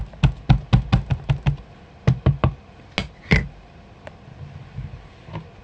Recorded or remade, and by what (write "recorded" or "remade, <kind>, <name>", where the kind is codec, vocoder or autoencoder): recorded